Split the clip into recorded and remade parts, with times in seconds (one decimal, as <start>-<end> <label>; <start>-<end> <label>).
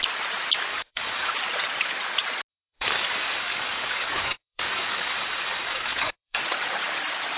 0.0-0.7 recorded; 0.7-1.3 remade; 1.3-2.5 recorded; 2.5-6.4 remade; 6.4-7.4 recorded